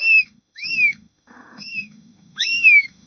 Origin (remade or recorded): remade